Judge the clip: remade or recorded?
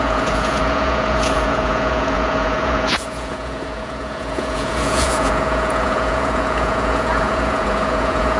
remade